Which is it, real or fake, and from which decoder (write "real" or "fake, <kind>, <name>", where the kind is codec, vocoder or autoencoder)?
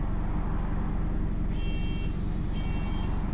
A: real